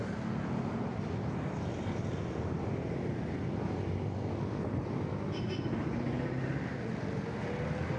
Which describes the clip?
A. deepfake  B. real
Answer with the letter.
B